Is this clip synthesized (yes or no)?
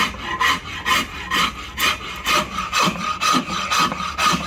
no